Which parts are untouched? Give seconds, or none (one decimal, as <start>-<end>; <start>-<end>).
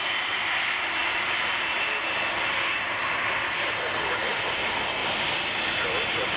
none